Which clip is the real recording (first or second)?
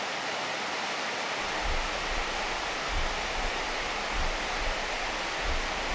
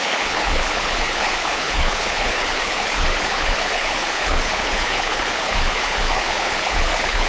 first